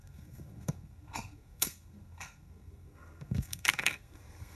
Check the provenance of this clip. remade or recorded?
remade